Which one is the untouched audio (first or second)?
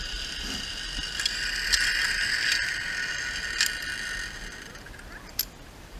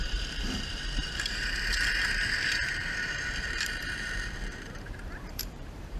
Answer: first